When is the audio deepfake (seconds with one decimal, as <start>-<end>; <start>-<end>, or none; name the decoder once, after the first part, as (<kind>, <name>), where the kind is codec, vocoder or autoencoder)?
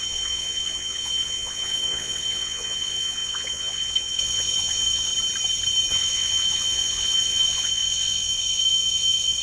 0.0-5.1 (vocoder, WaveNeXt); 5.9-9.4